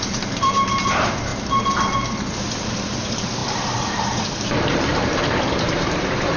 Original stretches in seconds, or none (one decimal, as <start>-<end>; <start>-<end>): 1.3-2.6